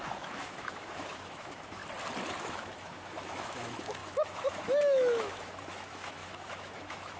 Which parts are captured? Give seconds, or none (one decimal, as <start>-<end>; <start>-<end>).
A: 1.8-2.4